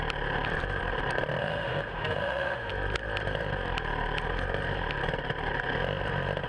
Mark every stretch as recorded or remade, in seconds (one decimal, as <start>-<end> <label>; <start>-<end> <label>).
0.0-1.4 recorded; 1.4-2.7 remade; 2.7-6.5 recorded